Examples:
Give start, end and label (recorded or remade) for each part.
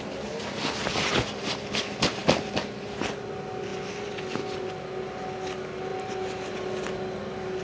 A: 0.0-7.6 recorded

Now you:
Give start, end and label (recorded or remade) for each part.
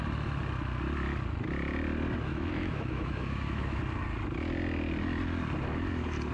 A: 0.0-2.3 recorded; 2.3-3.8 remade; 3.8-6.3 recorded